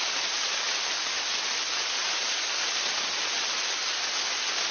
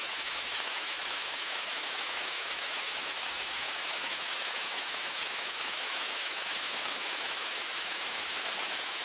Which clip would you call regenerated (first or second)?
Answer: second